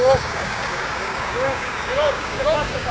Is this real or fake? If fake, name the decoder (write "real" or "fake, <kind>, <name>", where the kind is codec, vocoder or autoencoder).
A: fake, codec, DAC